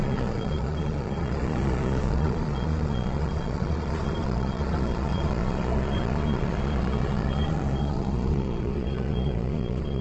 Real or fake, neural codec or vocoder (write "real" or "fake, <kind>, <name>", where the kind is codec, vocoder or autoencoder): fake, vocoder, Vocos